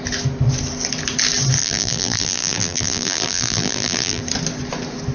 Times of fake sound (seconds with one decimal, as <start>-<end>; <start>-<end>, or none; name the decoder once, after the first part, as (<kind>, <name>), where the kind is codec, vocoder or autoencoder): 1.6-4.2 (vocoder, BigVGAN v2)